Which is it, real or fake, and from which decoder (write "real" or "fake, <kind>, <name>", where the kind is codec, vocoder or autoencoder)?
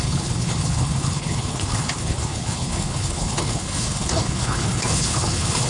fake, codec, HILCodec